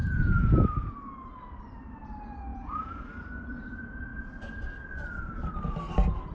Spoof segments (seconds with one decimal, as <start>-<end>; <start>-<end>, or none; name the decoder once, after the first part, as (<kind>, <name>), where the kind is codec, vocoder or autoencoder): 0.0-0.9 (vocoder, Vocos); 2.5-3.1